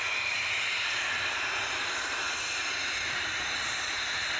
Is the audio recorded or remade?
recorded